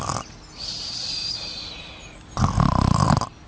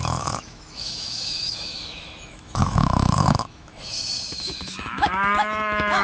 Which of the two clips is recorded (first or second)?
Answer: first